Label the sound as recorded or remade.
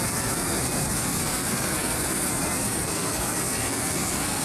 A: remade